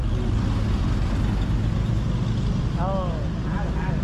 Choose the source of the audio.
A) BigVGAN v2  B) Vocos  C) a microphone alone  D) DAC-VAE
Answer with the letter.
C